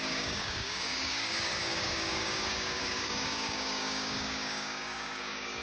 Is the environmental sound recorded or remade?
remade